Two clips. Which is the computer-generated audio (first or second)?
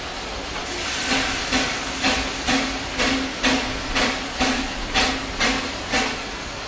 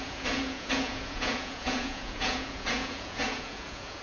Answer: second